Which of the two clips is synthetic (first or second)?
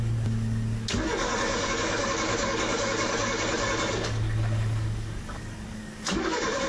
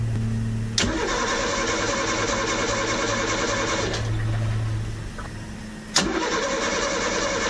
first